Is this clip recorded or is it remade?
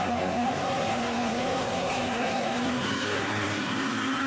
remade